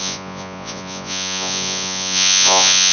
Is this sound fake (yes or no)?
yes